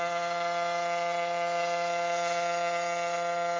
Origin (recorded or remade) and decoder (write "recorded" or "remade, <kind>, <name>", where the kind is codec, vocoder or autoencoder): remade, vocoder, WaveNeXt